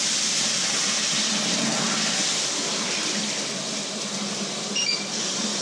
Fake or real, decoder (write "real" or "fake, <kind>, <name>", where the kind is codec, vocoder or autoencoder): fake, vocoder, BigVGAN v2